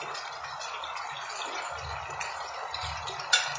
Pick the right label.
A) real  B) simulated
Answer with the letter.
A